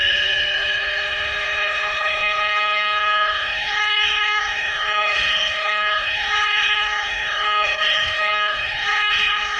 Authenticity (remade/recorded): remade